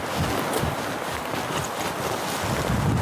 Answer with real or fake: real